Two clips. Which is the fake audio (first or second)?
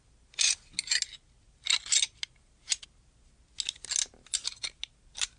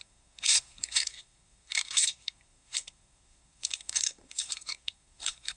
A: second